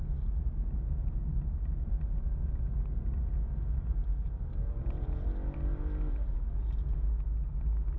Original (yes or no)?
yes